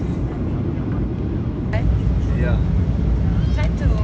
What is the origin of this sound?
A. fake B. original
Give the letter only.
B